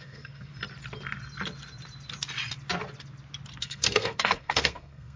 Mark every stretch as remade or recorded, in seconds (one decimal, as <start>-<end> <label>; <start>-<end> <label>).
0.0-0.5 remade; 0.5-3.6 recorded; 3.6-5.2 remade